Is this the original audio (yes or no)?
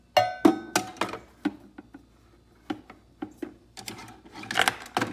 yes